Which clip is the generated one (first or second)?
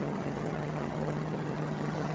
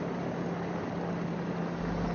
first